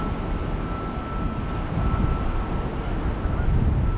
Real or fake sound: real